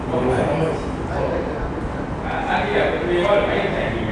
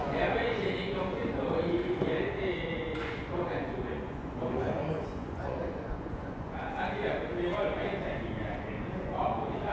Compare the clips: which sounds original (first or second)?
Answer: first